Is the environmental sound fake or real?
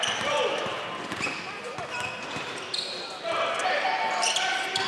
real